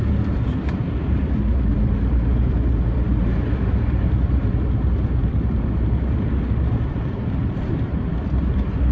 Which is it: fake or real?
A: fake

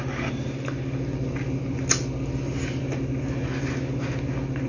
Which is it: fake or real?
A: real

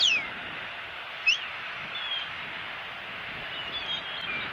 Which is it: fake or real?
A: real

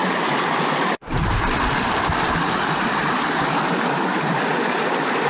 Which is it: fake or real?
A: real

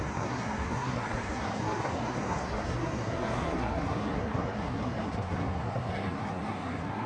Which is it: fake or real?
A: fake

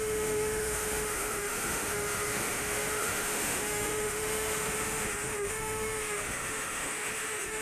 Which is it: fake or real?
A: fake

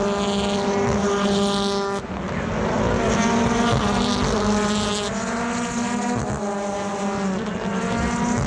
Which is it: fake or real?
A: real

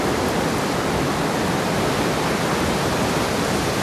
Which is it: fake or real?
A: real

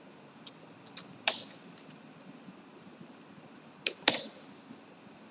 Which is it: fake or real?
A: real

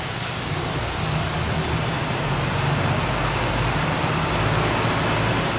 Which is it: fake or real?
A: real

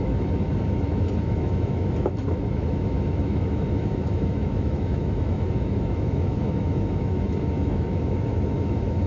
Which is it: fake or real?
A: fake